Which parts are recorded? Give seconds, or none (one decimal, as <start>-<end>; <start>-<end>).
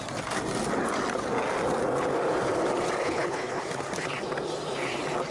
0.0-3.0; 3.6-5.3